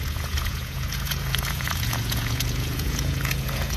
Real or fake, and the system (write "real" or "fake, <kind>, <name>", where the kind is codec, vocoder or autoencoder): fake, vocoder, Vocos